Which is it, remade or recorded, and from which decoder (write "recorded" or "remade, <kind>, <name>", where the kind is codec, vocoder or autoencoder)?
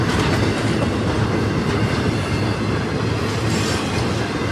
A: recorded